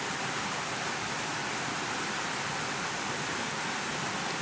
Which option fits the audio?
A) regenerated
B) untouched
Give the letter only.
B